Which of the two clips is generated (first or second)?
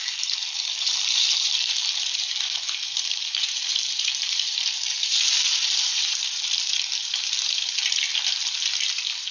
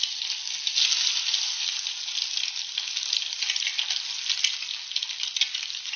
first